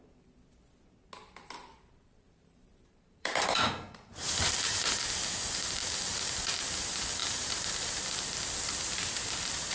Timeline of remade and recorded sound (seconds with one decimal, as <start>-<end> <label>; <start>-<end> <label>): 0.0-1.7 recorded; 1.7-5.0 remade; 5.0-7.2 recorded; 7.2-8.0 remade; 8.0-9.7 recorded